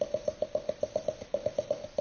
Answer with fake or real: real